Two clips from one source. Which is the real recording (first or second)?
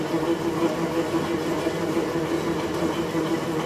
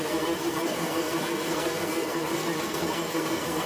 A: first